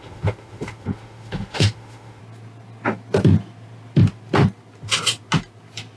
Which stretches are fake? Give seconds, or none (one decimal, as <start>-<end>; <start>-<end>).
0.0-2.2